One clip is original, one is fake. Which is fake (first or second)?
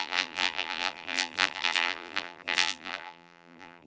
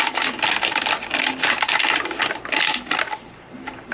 first